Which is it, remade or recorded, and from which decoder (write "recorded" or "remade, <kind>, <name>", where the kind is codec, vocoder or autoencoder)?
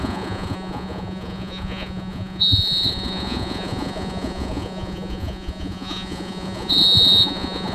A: remade, vocoder, Vocos